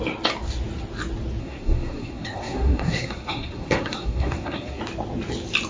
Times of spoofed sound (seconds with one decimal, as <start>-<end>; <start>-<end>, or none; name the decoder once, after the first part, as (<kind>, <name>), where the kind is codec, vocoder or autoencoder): 1.4-4.8 (codec, SNAC)